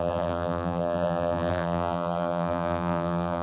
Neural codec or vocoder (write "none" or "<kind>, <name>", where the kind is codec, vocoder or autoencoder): vocoder, BigVGAN v2